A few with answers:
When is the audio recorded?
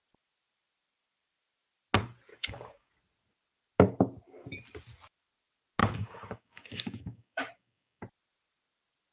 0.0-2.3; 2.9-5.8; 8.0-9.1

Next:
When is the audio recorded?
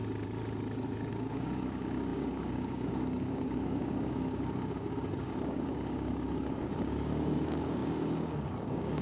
0.0-1.1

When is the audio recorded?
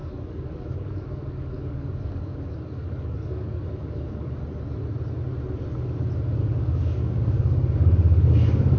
4.4-6.4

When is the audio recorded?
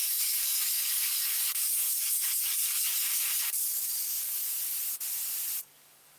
4.4-5.6